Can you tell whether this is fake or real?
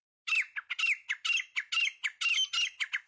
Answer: real